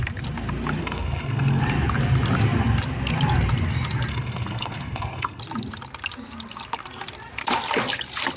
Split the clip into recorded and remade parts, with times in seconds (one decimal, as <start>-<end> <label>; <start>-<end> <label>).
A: 0.0-0.8 recorded; 0.8-1.6 remade; 1.6-4.1 recorded; 4.1-5.4 remade; 5.4-8.4 recorded